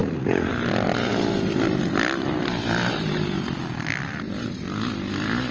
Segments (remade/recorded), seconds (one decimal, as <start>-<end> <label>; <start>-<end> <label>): 0.0-0.5 remade; 0.5-5.5 recorded